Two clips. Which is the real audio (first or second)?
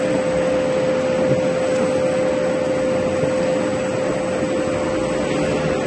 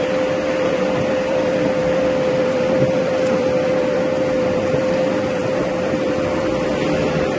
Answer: first